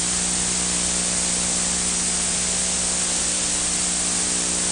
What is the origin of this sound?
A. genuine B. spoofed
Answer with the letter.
A